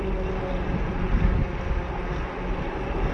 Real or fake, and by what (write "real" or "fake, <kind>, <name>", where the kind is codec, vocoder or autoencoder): real